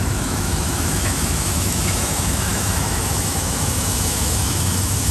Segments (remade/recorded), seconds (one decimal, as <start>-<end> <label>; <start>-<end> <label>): 0.0-5.1 remade